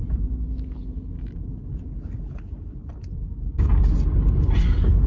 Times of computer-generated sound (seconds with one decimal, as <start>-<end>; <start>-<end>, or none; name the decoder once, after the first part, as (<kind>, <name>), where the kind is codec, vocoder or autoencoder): 3.2-3.9 (codec, DAC)